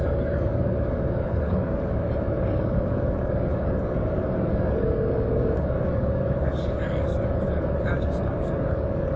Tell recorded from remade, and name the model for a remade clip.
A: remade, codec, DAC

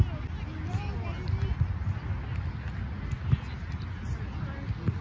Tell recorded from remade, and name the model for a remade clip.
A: recorded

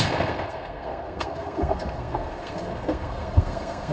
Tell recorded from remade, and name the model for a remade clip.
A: remade, codec, SNAC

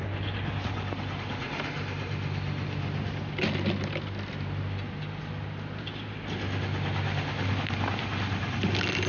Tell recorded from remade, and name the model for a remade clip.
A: recorded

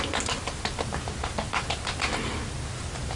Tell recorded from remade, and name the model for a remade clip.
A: recorded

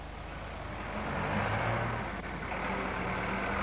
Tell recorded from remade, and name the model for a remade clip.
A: recorded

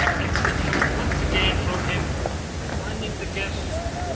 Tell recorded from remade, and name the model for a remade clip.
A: recorded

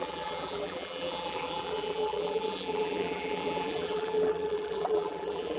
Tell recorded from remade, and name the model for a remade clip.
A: remade, vocoder, BigVGAN v2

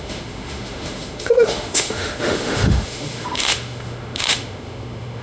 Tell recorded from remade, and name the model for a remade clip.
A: remade, autoencoder, DAC-VAE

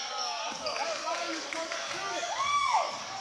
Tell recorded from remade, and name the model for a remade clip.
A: remade, codec, DAC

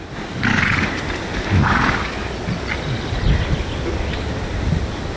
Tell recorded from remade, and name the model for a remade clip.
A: recorded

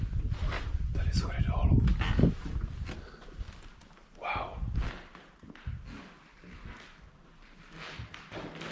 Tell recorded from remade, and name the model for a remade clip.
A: recorded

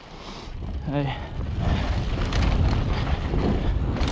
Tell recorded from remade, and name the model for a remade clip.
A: recorded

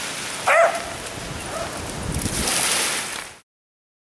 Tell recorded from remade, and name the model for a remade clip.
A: recorded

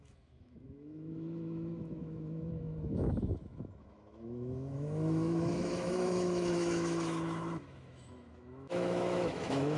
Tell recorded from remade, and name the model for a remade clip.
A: remade, autoencoder, DAC-VAE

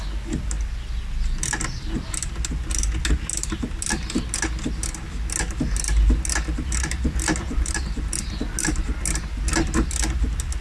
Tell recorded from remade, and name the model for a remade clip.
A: recorded